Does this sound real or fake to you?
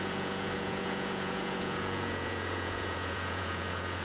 fake